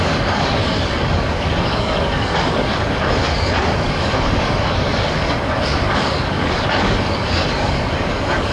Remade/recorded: remade